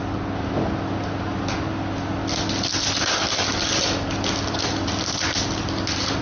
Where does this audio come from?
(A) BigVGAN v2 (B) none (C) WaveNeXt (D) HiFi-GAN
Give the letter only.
B